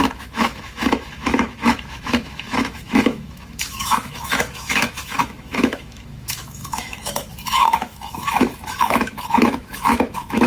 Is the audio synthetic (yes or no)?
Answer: yes